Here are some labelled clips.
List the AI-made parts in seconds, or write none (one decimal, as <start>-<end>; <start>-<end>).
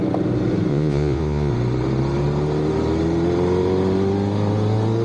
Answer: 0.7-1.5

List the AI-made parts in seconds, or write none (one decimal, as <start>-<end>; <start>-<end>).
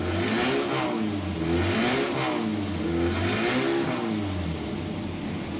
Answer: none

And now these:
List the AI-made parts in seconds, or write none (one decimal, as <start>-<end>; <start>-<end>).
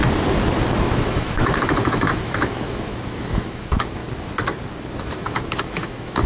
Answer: 0.8-4.0; 5.0-6.3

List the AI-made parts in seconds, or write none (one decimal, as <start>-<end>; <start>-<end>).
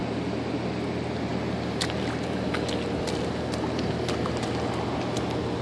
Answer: none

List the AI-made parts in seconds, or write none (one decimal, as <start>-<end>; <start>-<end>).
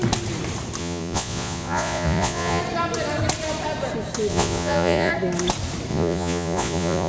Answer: 0.8-2.6; 4.3-5.1; 5.9-7.1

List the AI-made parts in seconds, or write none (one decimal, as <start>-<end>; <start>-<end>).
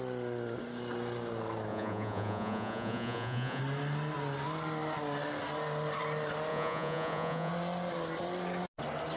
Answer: 1.7-3.6; 6.5-7.5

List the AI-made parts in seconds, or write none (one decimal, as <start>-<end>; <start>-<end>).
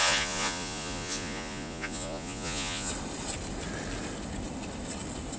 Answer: 0.0-2.9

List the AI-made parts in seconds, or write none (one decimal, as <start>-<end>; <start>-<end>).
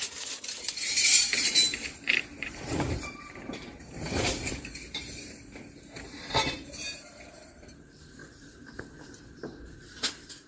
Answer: 0.0-10.5